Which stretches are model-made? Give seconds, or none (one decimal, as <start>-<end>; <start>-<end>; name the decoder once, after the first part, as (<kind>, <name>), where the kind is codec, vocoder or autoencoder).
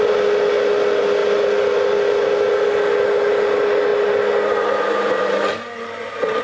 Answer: none